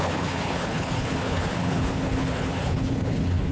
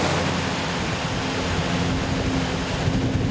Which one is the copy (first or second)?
first